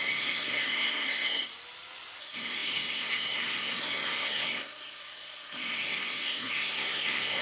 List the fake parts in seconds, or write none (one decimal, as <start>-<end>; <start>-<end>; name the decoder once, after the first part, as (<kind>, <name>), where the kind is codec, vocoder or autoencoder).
0.0-1.5 (codec, SNAC); 2.2-7.4